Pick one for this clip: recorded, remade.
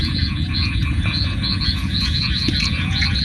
remade